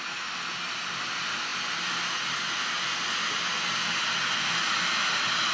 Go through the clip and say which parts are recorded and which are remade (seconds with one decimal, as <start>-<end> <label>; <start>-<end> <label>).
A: 0.0-5.5 recorded